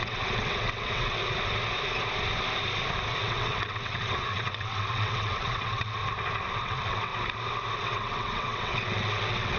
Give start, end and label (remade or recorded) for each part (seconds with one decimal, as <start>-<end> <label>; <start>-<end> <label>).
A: 0.0-1.2 remade; 1.2-3.2 recorded; 3.2-6.0 remade; 6.0-6.6 recorded; 6.6-7.1 remade; 7.1-7.7 recorded; 7.7-9.6 remade